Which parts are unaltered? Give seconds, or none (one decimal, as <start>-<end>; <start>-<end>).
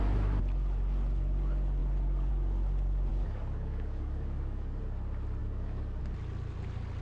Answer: 0.0-3.1; 4.8-5.4; 6.0-7.0